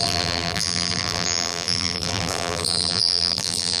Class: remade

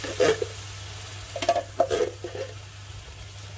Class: recorded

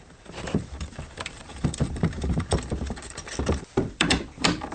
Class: remade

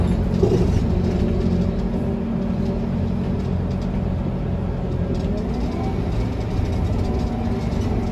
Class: recorded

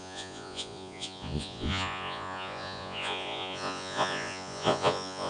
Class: remade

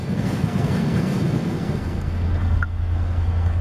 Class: remade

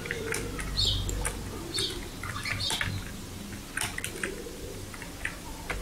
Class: recorded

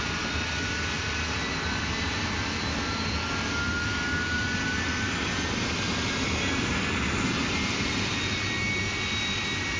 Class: recorded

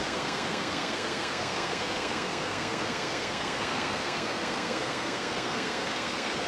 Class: remade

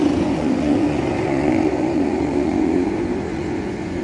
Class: remade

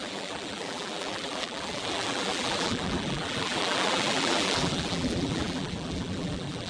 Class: remade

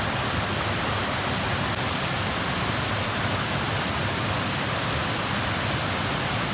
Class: recorded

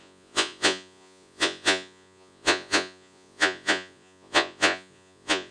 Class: remade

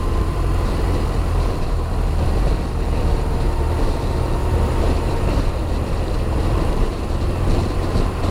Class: remade